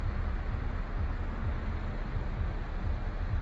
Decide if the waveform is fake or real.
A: real